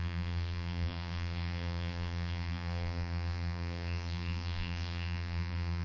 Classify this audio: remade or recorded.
remade